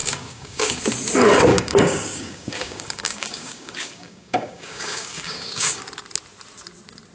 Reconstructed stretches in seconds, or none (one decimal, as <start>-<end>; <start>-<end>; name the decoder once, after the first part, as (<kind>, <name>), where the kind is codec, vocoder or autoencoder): 0.0-0.8 (codec, DAC); 1.5-5.8